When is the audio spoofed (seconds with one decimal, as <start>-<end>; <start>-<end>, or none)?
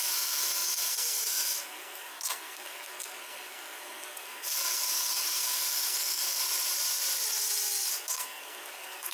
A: 0.0-6.4; 7.9-9.1